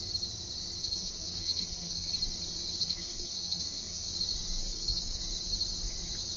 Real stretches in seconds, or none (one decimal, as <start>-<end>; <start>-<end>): 0.0-0.8; 2.1-2.8; 4.1-4.6; 5.2-6.4

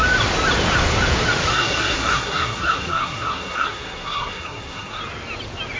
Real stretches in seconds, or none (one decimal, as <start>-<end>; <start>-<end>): 0.0-1.5; 5.0-5.8

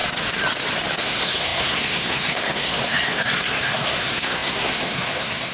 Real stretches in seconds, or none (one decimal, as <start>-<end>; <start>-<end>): 0.0-1.0

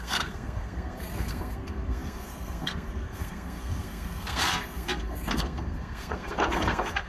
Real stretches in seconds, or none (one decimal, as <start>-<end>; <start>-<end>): none

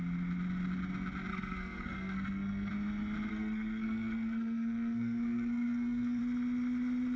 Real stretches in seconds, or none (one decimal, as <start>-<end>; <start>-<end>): 0.0-1.3; 2.7-3.3; 6.2-7.2